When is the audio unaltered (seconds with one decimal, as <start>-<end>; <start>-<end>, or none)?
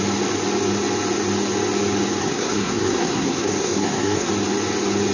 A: 0.0-2.2; 4.3-5.1